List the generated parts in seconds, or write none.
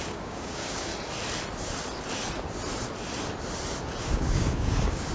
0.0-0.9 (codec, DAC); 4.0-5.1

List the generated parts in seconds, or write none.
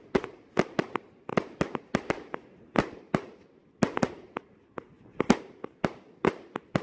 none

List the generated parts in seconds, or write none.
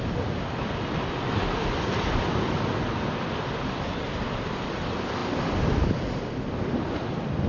none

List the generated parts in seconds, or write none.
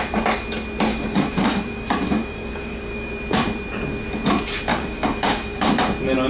0.9-3.1 (codec, DAC); 4.7-5.7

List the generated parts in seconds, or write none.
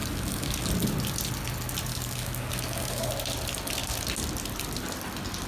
0.0-0.7 (codec, DAC); 1.9-3.1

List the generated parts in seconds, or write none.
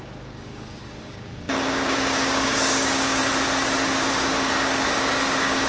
0.0-3.2 (codec, DAC); 4.1-5.7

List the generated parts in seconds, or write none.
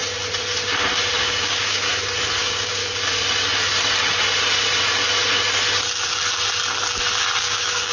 1.2-1.9 (codec, DAC); 2.4-2.8; 7.4-7.9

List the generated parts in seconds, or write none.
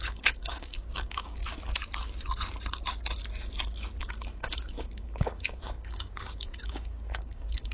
0.0-1.4 (codec, DAC); 4.0-7.7